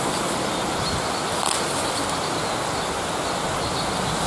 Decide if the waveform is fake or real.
real